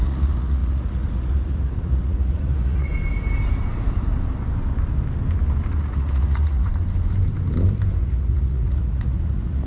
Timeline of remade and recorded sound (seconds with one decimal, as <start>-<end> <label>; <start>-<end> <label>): 0.0-2.9 remade; 2.9-5.8 recorded; 5.8-6.7 remade; 6.7-8.0 recorded; 8.0-9.7 remade

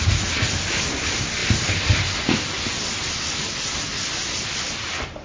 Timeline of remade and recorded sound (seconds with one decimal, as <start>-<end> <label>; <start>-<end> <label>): 0.0-5.2 recorded

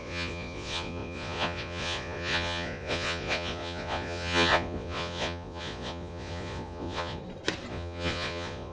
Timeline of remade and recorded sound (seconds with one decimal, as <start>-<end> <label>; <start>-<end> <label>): 0.0-7.2 remade; 7.2-7.7 recorded; 7.7-8.7 remade

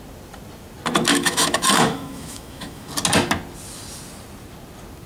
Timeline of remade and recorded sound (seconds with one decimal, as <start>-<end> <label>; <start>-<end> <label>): 0.0-1.1 recorded; 1.1-2.9 remade; 2.9-5.1 recorded

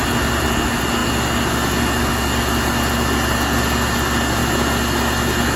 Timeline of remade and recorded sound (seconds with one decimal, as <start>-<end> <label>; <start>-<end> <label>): 0.0-5.6 recorded

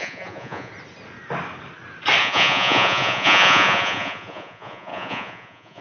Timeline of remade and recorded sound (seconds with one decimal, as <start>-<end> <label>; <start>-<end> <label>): 0.0-0.7 remade; 0.7-2.2 recorded; 2.2-5.8 remade

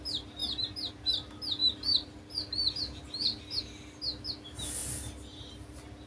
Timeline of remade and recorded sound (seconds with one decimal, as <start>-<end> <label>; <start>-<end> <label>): 0.0-1.6 recorded; 1.6-3.6 remade; 3.6-6.1 recorded